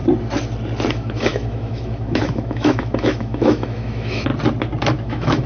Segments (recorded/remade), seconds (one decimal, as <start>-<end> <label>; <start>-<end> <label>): 0.0-0.9 recorded; 0.9-4.3 remade; 4.3-4.9 recorded; 4.9-5.5 remade